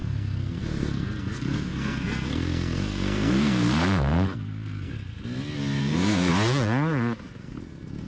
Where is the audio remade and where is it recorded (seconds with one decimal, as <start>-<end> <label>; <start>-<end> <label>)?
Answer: 0.0-4.9 remade; 4.9-5.8 recorded; 5.8-6.3 remade; 6.3-7.4 recorded; 7.4-8.1 remade